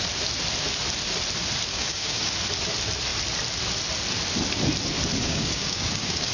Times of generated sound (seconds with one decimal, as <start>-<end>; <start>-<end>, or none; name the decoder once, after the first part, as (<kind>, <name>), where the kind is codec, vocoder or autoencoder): 1.7-2.3 (codec, DAC); 5.2-6.3